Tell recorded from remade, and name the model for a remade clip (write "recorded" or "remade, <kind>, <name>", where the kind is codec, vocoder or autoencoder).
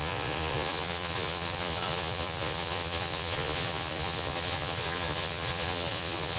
remade, vocoder, Vocos